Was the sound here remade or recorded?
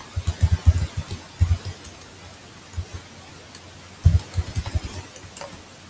recorded